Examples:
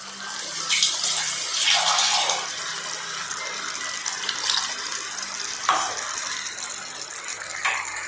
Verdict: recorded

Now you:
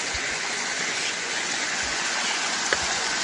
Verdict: remade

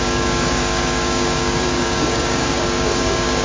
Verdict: remade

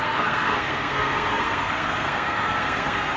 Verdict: remade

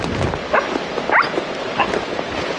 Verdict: recorded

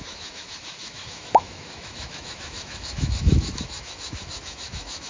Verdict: remade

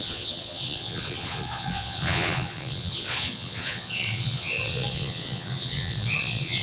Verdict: remade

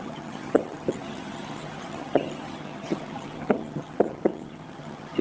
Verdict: remade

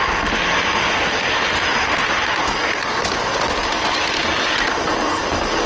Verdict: recorded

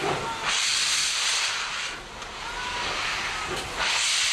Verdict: recorded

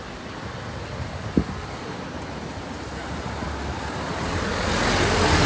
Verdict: recorded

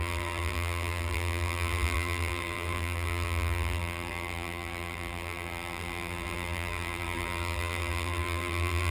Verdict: remade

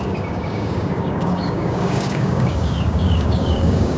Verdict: remade